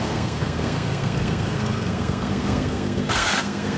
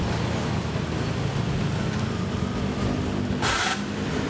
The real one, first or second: second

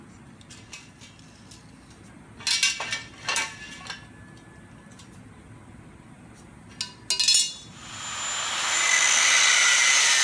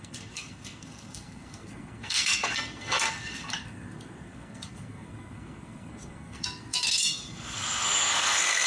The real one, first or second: first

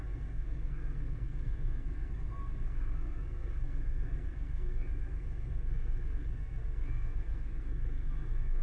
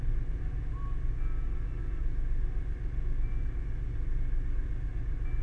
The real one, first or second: second